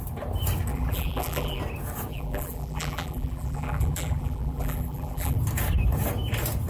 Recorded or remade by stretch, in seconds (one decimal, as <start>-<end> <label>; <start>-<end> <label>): 0.0-0.7 recorded; 0.7-1.6 remade; 1.6-2.1 recorded; 2.1-5.4 remade; 5.4-6.7 recorded